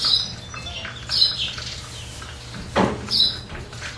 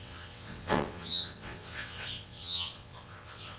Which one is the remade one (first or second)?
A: second